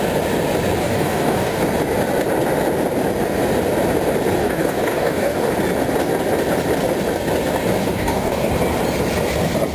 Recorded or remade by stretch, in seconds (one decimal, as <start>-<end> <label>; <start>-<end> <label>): 0.0-0.8 recorded; 0.8-1.6 remade; 1.6-4.4 recorded; 4.4-5.5 remade; 5.5-7.8 recorded; 7.8-8.5 remade; 8.5-9.7 recorded